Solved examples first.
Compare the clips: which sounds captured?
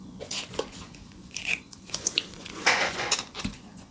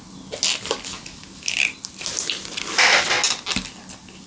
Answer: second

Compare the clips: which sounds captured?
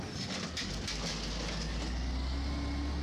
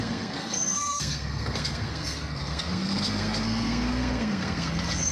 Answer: first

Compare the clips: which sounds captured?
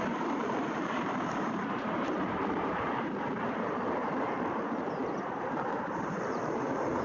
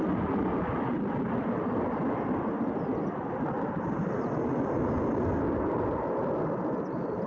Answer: second